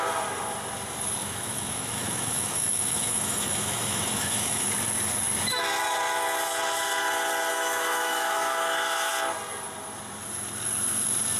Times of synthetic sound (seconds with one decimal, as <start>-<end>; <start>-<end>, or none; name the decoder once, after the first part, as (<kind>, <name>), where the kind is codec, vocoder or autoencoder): 1.2-4.7 (autoencoder, DAC-VAE); 7.5-9.1